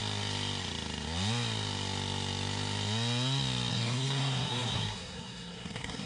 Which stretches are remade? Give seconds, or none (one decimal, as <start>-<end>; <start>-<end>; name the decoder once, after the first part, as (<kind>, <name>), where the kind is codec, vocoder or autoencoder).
3.7-6.1 (codec, SNAC)